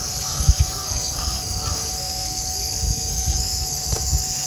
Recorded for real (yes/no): no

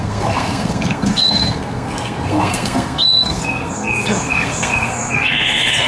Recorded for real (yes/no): no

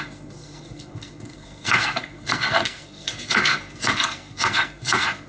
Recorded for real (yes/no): no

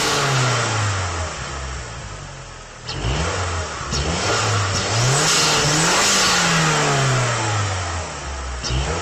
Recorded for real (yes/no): yes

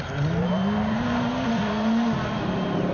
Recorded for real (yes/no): yes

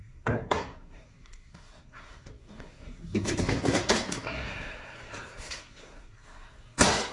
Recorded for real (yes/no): no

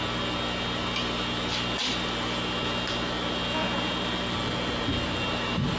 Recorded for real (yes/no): yes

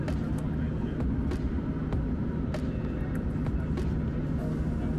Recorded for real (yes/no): yes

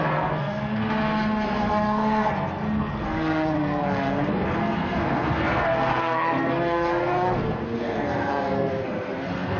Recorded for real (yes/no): no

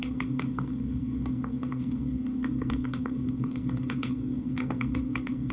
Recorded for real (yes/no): no